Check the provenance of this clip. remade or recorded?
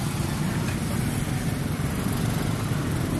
recorded